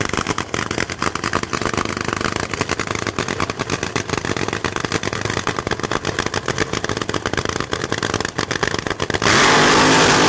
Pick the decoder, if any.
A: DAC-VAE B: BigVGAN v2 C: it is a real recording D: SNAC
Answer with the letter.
C